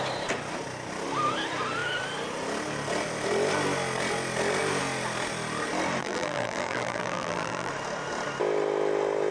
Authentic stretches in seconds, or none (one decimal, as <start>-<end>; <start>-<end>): 0.0-6.0; 7.7-9.3